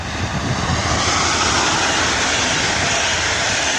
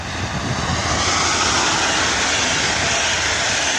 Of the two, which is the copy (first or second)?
first